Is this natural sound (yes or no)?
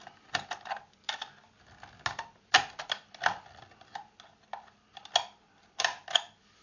yes